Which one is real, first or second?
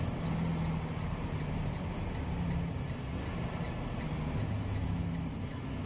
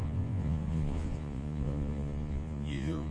first